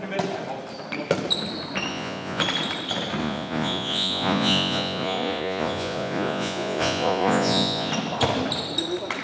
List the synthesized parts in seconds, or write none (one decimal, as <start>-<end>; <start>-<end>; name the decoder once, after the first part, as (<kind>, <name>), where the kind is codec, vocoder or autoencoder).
1.9-2.4 (vocoder, Vocos); 3.2-7.9